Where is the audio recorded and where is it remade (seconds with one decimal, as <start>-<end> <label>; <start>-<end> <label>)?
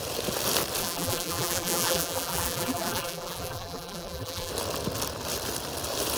0.0-0.8 recorded; 0.8-4.5 remade; 4.5-6.2 recorded